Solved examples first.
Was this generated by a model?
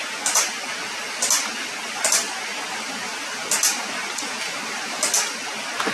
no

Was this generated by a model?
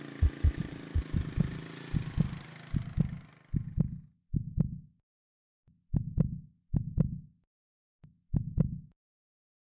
no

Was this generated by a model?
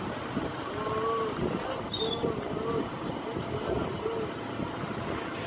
no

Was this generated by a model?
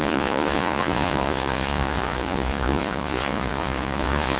yes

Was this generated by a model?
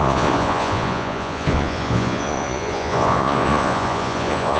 yes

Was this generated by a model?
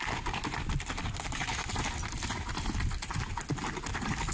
no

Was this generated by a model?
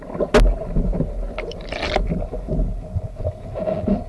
no